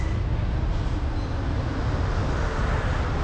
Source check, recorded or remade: recorded